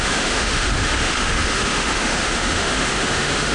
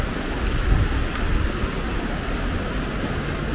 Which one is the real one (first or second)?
second